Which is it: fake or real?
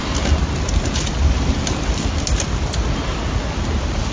real